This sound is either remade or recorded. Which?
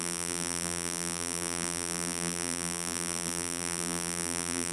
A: remade